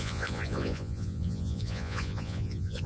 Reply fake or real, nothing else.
fake